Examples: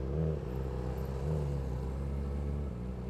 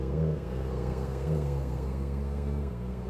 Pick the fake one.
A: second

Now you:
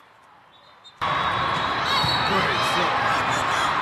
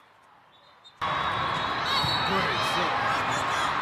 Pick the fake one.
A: first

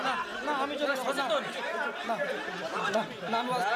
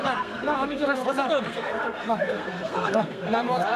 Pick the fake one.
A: second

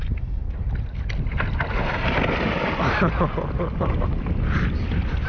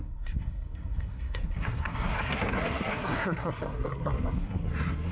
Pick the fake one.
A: second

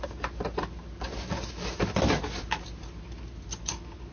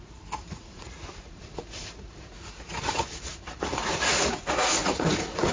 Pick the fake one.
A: second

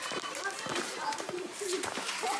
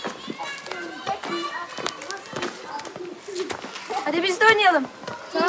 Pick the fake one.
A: first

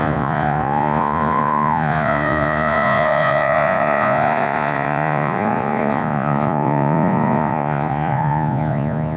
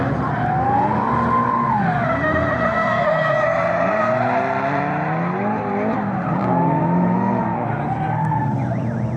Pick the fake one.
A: first